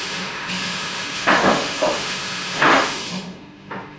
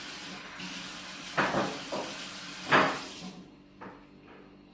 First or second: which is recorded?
second